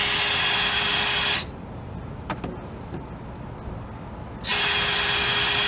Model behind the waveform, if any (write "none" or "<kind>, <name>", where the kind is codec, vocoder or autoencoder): none